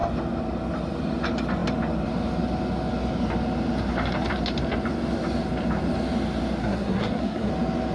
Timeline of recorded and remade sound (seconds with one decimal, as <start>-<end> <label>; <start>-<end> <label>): 0.0-6.6 recorded; 6.6-7.5 remade; 7.5-7.9 recorded